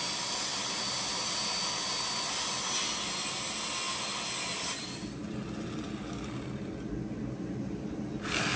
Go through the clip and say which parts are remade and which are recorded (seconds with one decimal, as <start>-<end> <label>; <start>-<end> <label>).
0.0-8.6 recorded